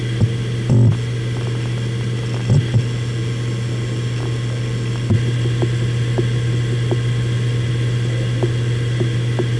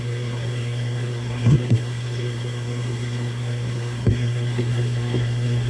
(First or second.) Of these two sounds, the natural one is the first